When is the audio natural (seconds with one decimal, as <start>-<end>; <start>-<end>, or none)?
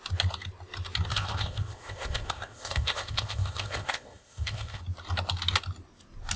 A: 0.0-1.1; 4.8-6.4